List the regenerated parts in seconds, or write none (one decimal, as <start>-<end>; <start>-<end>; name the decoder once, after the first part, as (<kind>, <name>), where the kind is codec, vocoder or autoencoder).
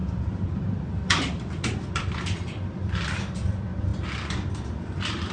0.0-3.9 (vocoder, BigVGAN v2); 4.5-5.3